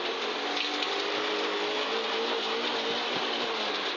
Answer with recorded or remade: recorded